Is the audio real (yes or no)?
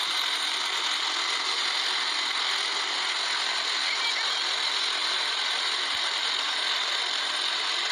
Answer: yes